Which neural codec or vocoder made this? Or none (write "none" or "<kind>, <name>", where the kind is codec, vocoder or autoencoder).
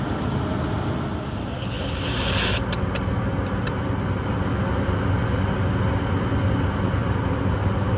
none